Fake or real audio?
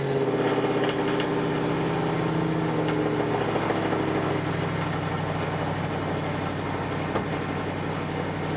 real